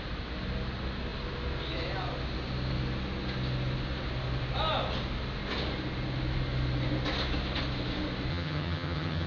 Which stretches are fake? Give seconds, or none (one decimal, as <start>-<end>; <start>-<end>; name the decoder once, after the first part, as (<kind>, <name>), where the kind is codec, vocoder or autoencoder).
8.3-9.3 (vocoder, HiFi-GAN)